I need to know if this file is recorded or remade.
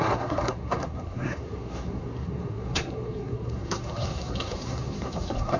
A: remade